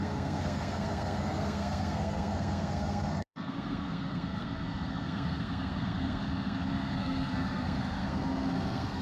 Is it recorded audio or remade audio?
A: remade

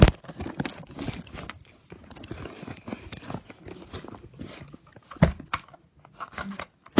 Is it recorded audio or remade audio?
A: recorded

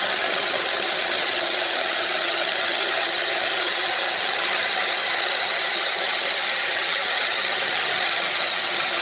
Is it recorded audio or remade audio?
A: remade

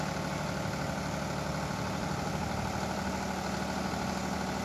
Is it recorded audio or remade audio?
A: recorded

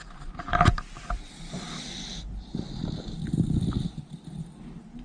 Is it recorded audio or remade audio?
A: recorded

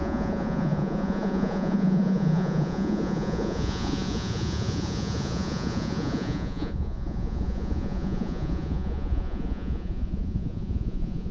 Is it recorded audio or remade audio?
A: remade